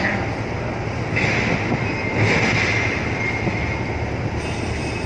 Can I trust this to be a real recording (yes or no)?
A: yes